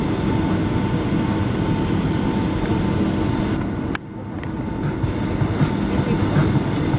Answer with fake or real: real